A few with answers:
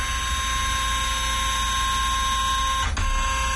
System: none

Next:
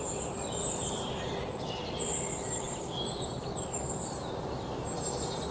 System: none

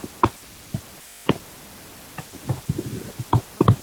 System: vocoder, BigVGAN v2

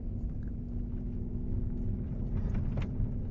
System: none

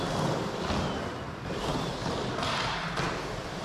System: vocoder, BigVGAN v2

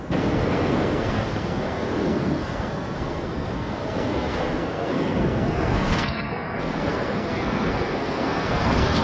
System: codec, SNAC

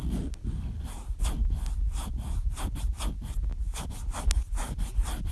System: none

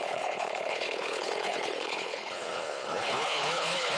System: codec, HILCodec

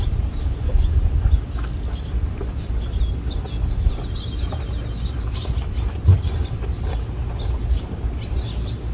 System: none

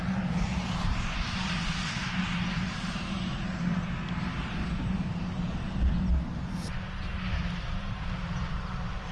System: vocoder, BigVGAN v2